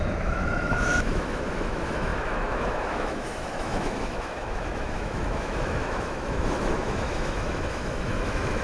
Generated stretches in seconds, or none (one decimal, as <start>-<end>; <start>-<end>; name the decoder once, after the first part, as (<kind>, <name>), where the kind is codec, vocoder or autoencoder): 0.0-8.6 (autoencoder, DAC-VAE)